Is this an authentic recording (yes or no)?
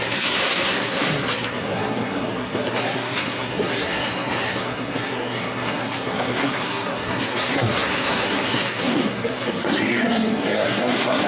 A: no